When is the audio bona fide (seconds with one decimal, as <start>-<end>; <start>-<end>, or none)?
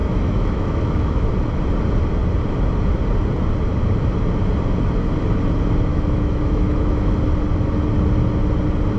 1.3-5.9; 7.2-9.0